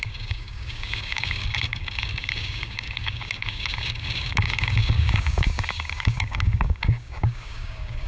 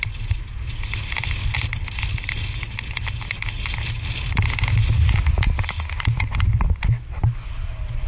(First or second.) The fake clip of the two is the first